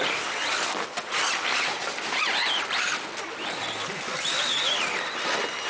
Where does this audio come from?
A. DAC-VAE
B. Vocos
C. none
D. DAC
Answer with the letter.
C